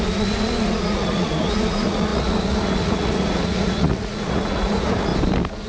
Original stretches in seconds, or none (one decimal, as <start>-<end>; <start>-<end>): 5.1-5.7